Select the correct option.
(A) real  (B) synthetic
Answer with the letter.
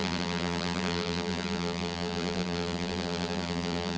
B